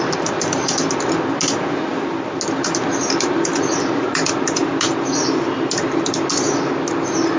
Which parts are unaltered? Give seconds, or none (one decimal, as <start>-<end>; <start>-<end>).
0.0-7.4